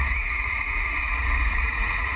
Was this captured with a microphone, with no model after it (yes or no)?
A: no